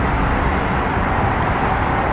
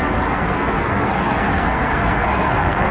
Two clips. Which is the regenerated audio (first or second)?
second